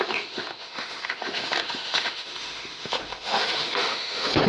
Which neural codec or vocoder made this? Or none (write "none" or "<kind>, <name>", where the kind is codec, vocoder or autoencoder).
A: autoencoder, DAC-VAE